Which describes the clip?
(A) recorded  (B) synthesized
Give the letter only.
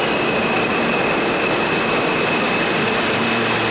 B